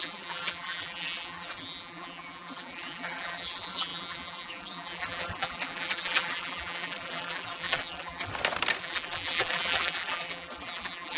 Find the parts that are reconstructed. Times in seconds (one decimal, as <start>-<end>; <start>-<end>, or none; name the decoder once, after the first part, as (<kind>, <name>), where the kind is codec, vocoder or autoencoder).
0.0-8.3 (vocoder, BigVGAN v2); 8.8-11.2